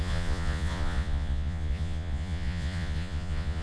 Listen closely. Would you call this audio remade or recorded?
remade